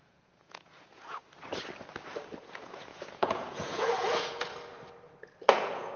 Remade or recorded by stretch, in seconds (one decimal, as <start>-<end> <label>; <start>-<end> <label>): 0.0-1.2 remade; 1.2-2.4 recorded; 2.4-4.5 remade; 4.5-5.5 recorded; 5.5-6.0 remade